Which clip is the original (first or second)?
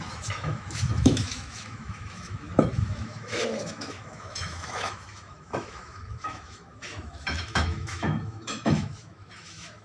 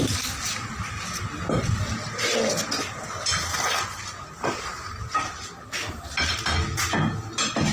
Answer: second